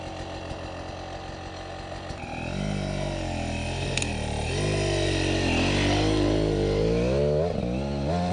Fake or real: real